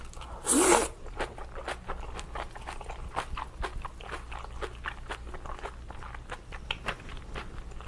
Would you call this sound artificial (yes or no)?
no